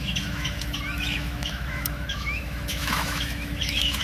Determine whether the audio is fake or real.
fake